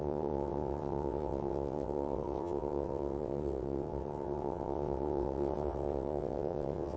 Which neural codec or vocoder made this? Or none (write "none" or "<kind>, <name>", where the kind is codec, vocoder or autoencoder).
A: vocoder, WaveNeXt